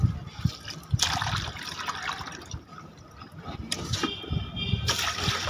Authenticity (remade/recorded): recorded